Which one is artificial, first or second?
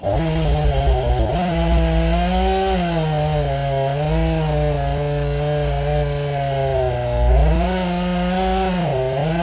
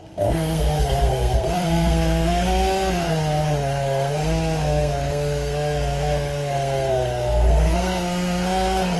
second